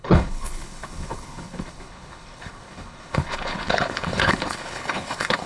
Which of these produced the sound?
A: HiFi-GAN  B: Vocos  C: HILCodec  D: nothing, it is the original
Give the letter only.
C